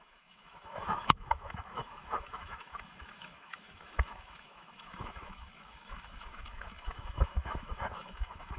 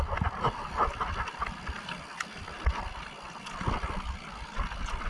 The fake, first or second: first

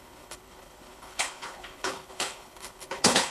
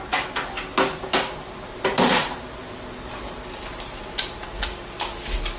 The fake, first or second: first